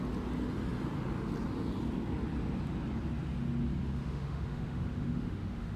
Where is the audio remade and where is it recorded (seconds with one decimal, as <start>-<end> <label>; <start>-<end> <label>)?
0.0-3.8 recorded; 3.8-5.8 remade